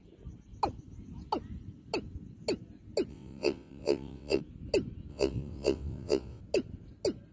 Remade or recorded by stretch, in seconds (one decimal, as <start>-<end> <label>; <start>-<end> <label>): 0.0-3.1 recorded; 3.1-4.4 remade; 4.4-5.1 recorded; 5.1-6.4 remade; 6.4-7.3 recorded